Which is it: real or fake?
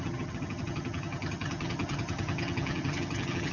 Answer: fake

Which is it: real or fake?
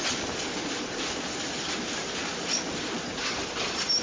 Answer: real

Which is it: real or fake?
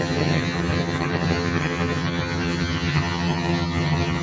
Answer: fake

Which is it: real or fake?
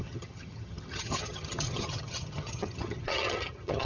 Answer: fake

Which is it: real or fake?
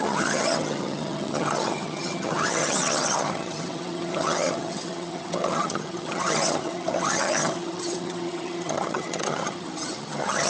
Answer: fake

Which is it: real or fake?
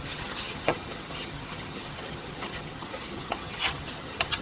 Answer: fake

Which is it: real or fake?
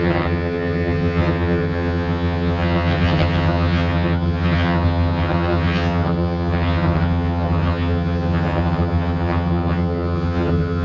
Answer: fake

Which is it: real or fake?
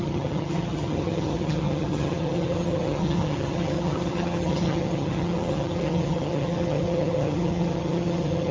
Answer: fake